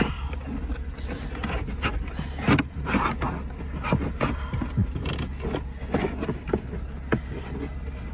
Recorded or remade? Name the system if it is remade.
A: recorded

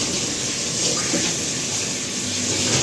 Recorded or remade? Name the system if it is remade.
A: recorded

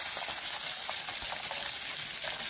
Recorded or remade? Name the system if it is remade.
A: recorded